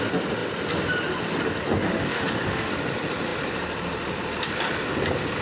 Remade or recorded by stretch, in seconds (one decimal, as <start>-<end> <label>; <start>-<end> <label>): 0.0-1.9 recorded; 1.9-2.7 remade; 2.7-5.4 recorded